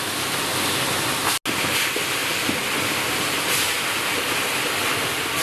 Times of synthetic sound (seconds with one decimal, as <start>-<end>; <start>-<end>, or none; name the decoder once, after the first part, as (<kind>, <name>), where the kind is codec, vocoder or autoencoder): none